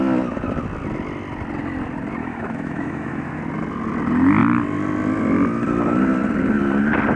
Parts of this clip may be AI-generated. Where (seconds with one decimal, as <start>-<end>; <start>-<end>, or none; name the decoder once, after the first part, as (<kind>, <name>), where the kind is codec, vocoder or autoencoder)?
2.2-3.4 (autoencoder, DAC-VAE)